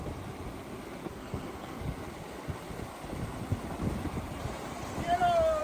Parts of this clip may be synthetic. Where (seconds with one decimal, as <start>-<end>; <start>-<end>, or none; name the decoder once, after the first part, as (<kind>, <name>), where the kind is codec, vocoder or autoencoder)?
1.0-1.8 (codec, SNAC)